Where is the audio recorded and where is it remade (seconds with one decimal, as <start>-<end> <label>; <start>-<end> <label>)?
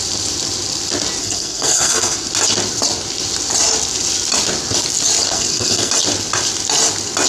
0.0-1.2 recorded; 1.2-2.3 remade; 2.3-5.3 recorded; 5.3-5.9 remade; 5.9-7.3 recorded